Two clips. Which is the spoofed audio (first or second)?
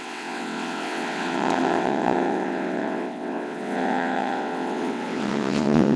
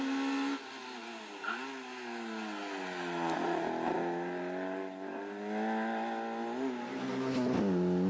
first